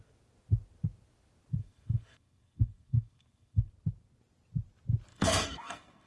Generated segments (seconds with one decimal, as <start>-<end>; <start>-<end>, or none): 1.6-3.7; 5.1-6.1